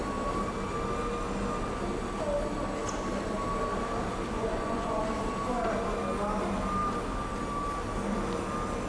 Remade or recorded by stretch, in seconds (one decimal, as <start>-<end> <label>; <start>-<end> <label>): 0.0-4.3 recorded; 4.3-5.0 remade; 5.0-8.9 recorded